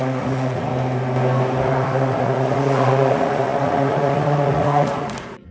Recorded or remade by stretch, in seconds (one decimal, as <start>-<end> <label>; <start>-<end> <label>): 0.0-0.7 remade; 0.7-1.6 recorded; 1.6-5.5 remade